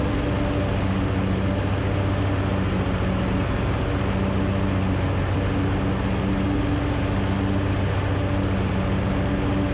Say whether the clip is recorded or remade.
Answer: recorded